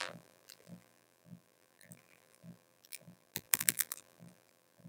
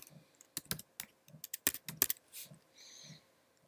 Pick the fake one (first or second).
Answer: first